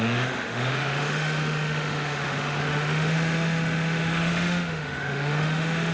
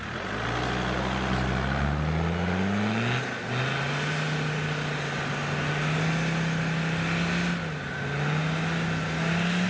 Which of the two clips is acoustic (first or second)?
second